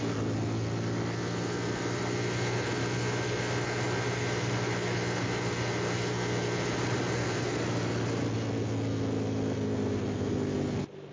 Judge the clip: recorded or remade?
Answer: recorded